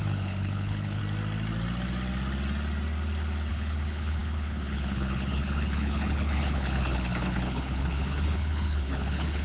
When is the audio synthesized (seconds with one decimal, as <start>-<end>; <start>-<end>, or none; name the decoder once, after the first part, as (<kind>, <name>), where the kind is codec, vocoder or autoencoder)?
0.0-1.0 (codec, HILCodec); 3.5-9.4

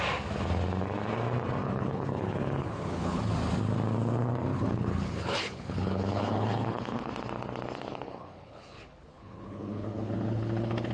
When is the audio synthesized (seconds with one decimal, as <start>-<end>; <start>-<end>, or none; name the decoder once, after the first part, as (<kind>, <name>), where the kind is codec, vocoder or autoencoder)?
1.6-3.2 (codec, HILCodec); 4.5-7.1; 7.9-10.9

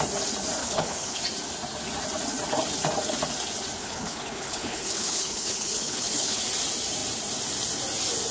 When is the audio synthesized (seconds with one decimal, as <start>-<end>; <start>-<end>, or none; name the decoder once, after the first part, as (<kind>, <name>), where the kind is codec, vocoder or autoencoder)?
0.6-1.2 (codec, HILCodec); 3.8-6.4

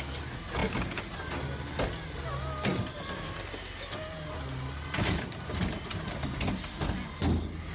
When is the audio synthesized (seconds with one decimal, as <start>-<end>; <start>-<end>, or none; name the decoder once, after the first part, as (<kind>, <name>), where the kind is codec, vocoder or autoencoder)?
none

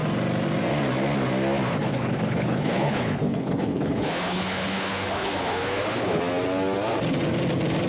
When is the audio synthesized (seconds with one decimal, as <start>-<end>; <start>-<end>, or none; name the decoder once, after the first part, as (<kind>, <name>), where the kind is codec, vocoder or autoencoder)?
1.7-6.2 (codec, HILCodec)